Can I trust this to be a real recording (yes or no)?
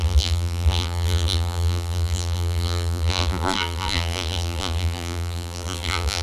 no